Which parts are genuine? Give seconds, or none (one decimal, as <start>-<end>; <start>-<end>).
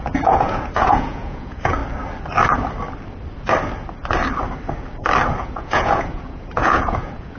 1.8-5.4